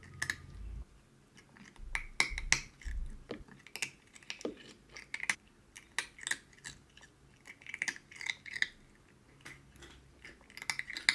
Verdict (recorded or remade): recorded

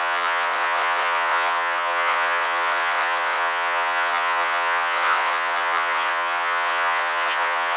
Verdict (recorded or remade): remade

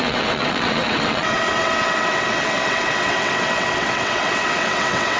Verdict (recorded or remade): remade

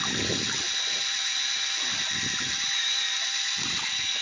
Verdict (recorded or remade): recorded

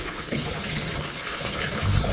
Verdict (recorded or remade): remade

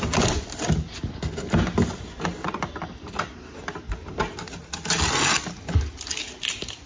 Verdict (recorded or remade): recorded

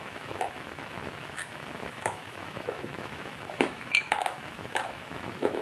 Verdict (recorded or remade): remade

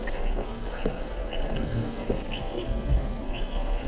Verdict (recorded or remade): remade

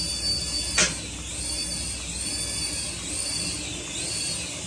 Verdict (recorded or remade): recorded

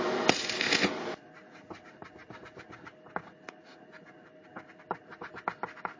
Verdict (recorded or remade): recorded